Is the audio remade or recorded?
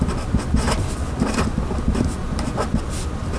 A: recorded